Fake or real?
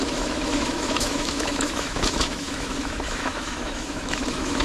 fake